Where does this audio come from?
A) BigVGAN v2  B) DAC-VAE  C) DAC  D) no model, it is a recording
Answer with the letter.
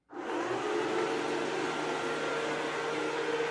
D